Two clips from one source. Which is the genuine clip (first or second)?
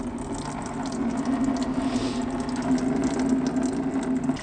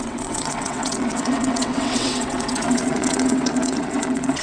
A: first